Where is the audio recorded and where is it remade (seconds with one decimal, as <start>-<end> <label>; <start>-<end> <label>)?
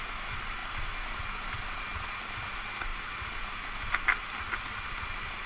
0.0-5.5 recorded